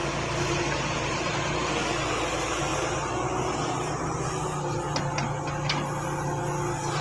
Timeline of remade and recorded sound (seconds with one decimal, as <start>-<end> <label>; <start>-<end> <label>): 0.0-1.3 remade; 1.3-7.0 recorded